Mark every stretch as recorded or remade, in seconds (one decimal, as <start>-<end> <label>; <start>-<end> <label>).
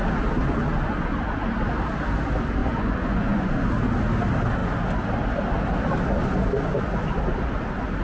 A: 0.0-2.6 recorded; 2.6-3.5 remade; 3.5-8.0 recorded